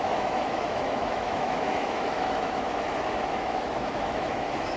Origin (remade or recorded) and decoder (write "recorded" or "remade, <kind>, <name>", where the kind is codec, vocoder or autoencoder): remade, autoencoder, DAC-VAE